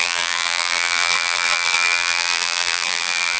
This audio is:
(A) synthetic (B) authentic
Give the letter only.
A